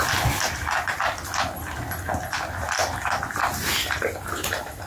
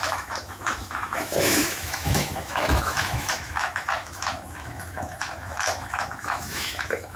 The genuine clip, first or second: first